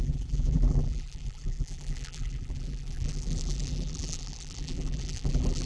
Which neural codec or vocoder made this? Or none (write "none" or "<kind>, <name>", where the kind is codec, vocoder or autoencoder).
vocoder, BigVGAN v2